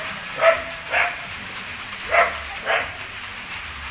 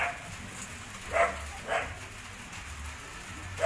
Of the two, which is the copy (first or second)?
first